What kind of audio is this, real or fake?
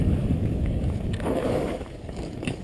fake